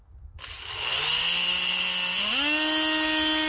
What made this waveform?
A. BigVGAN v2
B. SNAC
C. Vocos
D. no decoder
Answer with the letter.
D